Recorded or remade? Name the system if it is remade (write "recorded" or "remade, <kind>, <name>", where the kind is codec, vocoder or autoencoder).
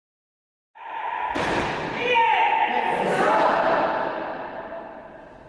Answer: recorded